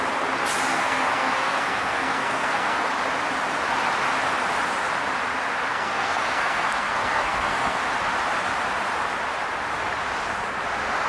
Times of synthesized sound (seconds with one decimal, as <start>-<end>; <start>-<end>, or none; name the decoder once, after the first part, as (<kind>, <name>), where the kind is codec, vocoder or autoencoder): 0.7-2.9 (codec, SNAC); 5.7-7.8